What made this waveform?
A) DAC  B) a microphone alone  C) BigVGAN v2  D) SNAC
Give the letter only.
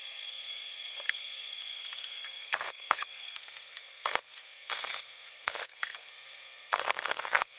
D